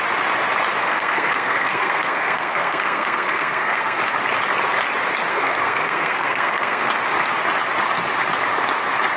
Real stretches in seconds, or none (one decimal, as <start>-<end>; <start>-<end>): 0.0-0.8; 4.0-5.3; 6.9-9.2

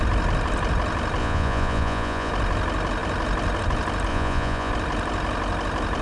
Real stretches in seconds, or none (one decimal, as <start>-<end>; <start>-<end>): 0.0-1.2; 2.3-4.1; 4.7-6.0